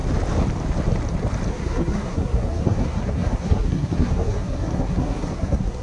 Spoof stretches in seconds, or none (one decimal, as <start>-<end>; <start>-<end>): 1.5-5.8